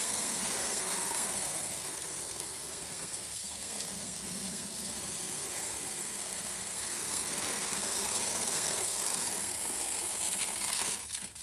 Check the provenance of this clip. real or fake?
fake